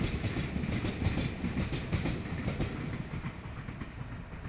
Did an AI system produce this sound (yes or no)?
no